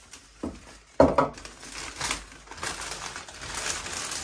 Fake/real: real